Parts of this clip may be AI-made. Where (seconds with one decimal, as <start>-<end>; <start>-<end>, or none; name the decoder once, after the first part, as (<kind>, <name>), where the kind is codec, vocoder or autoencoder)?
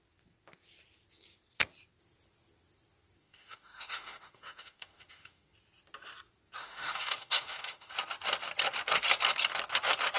3.2-5.5 (autoencoder, DAC-VAE); 6.6-7.9